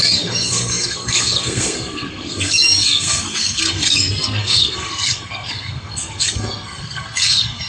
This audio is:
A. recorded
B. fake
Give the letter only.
B